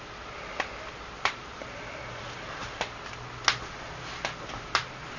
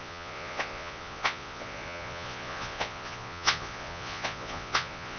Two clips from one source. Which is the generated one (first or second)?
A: second